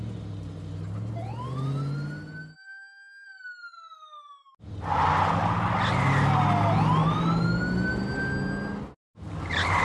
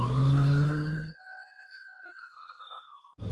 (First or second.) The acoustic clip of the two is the first